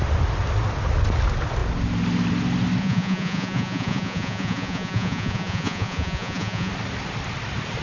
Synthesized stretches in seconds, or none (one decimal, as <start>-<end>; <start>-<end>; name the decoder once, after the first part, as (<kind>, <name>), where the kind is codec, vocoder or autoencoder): 2.8-6.7 (vocoder, Vocos)